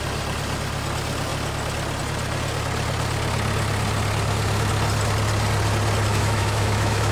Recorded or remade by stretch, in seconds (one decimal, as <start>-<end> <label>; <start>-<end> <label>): 0.0-6.1 recorded; 6.1-7.1 remade